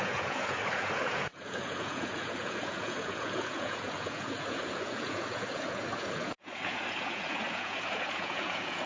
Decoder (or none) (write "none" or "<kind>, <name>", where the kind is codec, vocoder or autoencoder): vocoder, Vocos